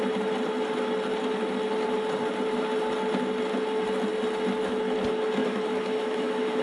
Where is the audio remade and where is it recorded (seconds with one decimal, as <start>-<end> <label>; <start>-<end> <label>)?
0.0-5.4 recorded; 5.4-6.6 remade

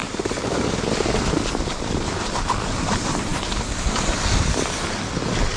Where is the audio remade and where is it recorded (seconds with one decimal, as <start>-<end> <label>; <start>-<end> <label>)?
0.0-5.6 recorded

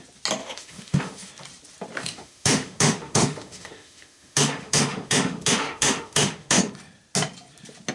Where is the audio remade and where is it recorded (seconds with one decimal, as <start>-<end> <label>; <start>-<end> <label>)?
0.0-0.4 recorded; 0.4-1.3 remade; 1.3-2.0 recorded; 2.0-6.6 remade; 6.6-7.9 recorded